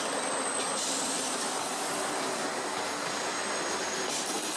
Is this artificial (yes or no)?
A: no